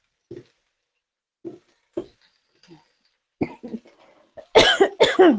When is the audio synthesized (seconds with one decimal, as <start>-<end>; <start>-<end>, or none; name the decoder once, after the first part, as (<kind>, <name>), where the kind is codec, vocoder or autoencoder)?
none